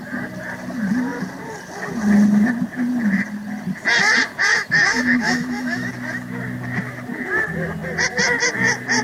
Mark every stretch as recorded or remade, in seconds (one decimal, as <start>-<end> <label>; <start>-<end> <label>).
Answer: 0.0-4.5 recorded; 4.5-5.9 remade; 5.9-9.0 recorded